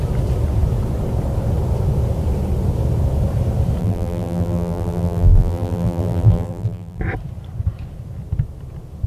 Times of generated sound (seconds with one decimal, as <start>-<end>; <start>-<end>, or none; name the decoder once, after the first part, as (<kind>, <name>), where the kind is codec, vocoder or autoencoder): 3.8-7.0 (vocoder, BigVGAN v2)